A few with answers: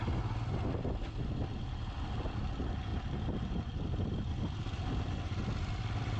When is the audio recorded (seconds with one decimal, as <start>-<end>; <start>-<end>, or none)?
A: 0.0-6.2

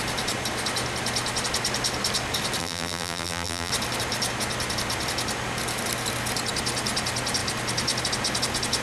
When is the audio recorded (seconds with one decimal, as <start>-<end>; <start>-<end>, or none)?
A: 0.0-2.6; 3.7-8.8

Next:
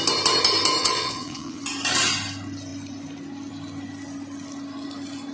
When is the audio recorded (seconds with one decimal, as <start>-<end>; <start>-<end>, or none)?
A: 0.0-0.8; 1.6-5.3

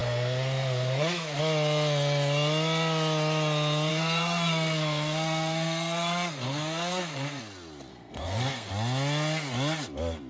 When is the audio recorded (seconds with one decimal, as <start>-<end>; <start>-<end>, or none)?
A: 1.4-3.9; 7.4-7.9; 8.7-10.3

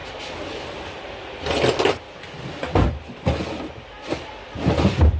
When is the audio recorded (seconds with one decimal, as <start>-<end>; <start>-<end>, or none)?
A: 0.0-5.2